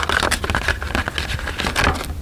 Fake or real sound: real